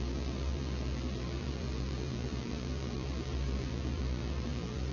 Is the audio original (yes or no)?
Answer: no